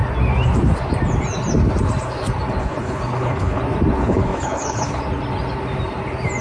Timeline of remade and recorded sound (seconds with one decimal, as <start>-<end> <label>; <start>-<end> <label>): 0.0-2.6 recorded; 2.6-3.6 remade; 3.6-4.0 recorded; 4.0-5.0 remade; 5.0-6.4 recorded

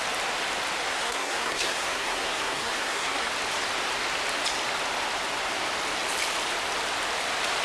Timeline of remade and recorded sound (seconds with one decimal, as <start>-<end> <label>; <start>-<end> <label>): 0.0-0.9 recorded; 0.9-3.3 remade; 3.3-7.6 recorded